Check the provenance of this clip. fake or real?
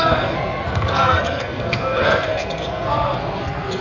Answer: fake